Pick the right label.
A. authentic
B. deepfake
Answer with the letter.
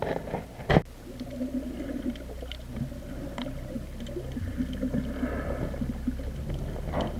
A